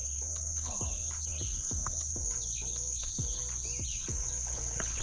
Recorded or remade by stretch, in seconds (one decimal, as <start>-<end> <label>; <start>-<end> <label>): 0.0-3.4 remade; 3.4-3.9 recorded; 3.9-5.0 remade